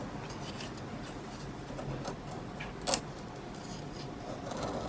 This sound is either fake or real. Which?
real